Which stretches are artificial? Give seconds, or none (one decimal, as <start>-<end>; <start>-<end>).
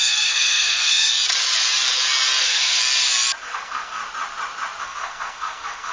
0.0-1.1; 2.4-2.8; 3.4-4.0; 4.8-5.9